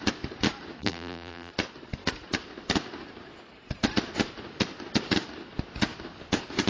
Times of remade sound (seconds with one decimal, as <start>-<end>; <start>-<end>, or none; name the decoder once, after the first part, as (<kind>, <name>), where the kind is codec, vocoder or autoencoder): 0.8-1.5 (vocoder, BigVGAN v2)